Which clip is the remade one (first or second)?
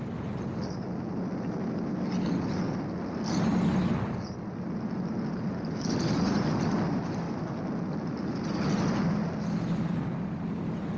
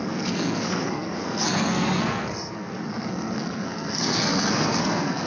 second